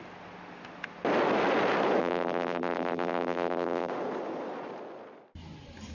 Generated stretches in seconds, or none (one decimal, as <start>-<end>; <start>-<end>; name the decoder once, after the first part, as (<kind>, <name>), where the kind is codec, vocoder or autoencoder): 2.0-3.9 (vocoder, BigVGAN v2)